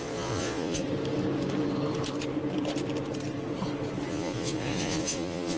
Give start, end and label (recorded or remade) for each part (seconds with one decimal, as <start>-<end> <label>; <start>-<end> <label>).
0.0-0.8 remade; 0.8-4.1 recorded; 4.1-5.6 remade